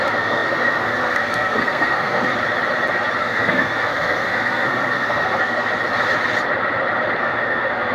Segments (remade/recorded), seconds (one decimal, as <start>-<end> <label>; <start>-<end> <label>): 0.0-2.3 remade; 2.3-3.2 recorded; 3.2-5.7 remade; 5.7-7.2 recorded; 7.2-7.9 remade